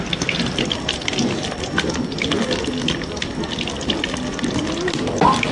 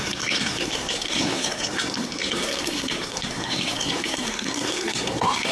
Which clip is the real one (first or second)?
first